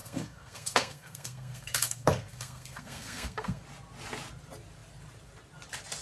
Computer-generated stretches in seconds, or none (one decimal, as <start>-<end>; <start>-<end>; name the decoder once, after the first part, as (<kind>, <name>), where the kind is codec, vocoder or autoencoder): 0.0-3.6 (codec, SNAC)